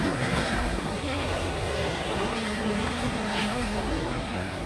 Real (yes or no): no